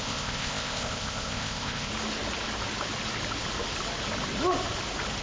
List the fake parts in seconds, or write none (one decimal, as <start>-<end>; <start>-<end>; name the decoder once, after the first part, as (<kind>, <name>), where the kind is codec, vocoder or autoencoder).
0.0-1.9 (codec, ZipCodec)